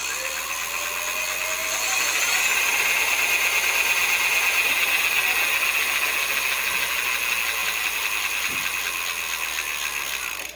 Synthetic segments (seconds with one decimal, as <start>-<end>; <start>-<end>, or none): 7.6-8.8